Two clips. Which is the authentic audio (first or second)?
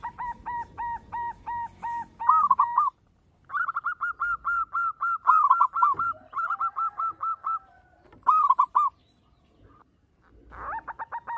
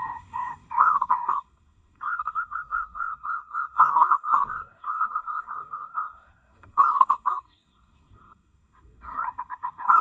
first